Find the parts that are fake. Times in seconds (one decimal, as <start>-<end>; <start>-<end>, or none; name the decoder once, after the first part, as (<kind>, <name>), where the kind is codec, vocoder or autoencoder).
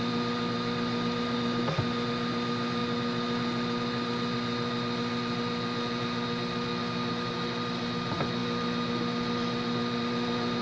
none